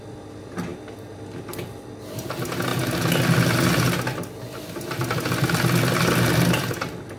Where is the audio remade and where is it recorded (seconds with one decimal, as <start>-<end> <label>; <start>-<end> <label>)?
0.0-7.2 recorded